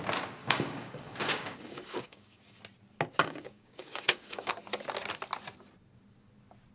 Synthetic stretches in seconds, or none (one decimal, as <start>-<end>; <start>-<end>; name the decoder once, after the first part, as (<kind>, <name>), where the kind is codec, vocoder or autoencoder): 0.4-2.6 (codec, DAC); 3.2-4.5